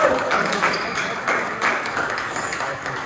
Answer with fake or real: fake